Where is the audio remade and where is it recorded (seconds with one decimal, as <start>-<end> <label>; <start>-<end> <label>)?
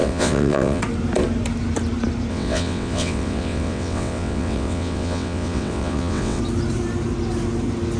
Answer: 0.0-0.8 remade; 0.8-2.3 recorded; 2.3-6.4 remade; 6.4-8.0 recorded